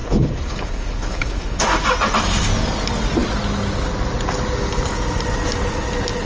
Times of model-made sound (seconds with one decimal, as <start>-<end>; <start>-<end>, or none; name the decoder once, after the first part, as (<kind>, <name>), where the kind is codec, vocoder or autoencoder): 0.0-1.6 (codec, HILCodec)